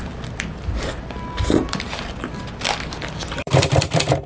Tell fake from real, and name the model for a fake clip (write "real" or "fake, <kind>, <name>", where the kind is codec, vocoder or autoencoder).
fake, vocoder, BigVGAN v2